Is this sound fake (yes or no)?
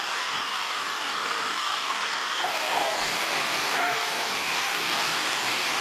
yes